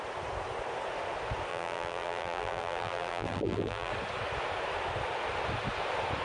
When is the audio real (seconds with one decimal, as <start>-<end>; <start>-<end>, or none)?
0.0-1.5; 3.9-6.2